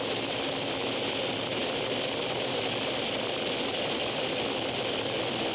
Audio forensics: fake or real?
real